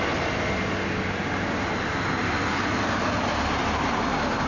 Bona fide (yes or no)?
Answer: yes